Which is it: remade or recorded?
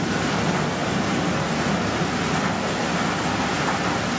recorded